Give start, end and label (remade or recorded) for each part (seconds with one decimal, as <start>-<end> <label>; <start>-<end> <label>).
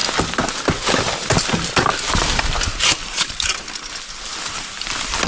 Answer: 0.0-5.3 recorded